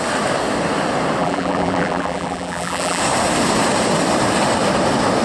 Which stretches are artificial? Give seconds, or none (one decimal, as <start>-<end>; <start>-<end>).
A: 1.2-3.0